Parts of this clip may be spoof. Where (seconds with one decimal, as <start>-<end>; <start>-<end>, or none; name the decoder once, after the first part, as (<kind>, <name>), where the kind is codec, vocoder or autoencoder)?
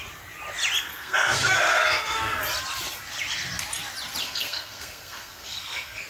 0.9-2.4 (codec, SNAC); 4.2-6.1